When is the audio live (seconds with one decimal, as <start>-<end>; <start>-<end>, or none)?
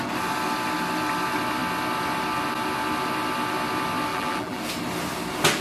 0.0-4.1; 4.6-5.6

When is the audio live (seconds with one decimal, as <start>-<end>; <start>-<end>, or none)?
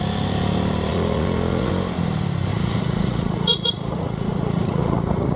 0.0-0.9; 1.7-2.5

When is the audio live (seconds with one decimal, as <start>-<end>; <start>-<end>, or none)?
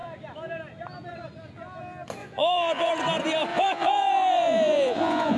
0.0-2.2; 2.9-3.5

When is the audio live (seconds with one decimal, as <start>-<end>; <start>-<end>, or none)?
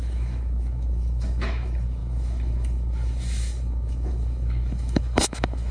none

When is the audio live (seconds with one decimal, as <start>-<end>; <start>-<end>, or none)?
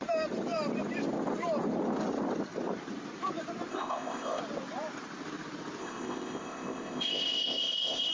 0.0-3.7; 4.4-5.8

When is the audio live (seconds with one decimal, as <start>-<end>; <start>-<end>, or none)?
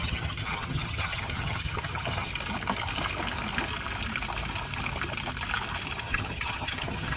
2.3-6.0